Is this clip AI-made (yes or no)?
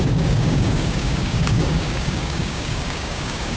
yes